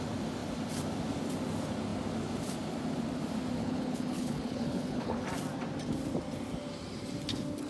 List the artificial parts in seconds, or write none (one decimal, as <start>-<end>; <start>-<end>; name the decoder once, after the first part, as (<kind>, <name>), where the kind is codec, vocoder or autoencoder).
3.6-5.2 (codec, HILCodec)

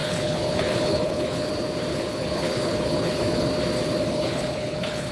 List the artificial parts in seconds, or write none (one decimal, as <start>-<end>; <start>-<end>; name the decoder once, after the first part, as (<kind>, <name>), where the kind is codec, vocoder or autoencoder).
0.0-1.5 (codec, HILCodec); 1.9-3.5; 4.1-5.1

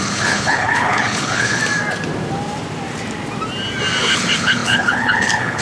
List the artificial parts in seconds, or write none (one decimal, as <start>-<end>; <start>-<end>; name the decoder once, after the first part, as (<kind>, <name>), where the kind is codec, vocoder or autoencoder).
0.0-1.6 (codec, HILCodec); 4.0-5.6

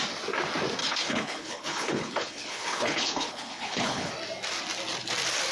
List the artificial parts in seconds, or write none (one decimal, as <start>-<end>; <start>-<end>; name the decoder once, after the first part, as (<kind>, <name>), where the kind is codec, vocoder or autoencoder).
0.8-4.1 (codec, HILCodec)

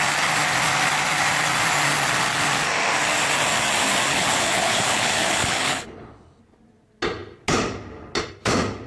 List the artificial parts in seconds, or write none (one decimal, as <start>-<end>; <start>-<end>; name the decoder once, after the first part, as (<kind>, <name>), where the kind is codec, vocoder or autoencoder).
4.1-6.4 (codec, HILCodec)

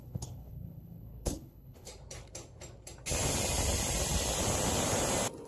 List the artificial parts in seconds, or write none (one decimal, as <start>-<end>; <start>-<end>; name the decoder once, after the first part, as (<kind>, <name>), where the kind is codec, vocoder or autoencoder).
0.0-1.9 (codec, HILCodec)

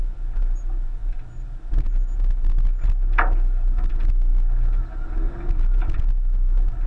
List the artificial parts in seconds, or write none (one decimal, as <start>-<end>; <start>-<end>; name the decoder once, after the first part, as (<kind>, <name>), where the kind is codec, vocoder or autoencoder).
none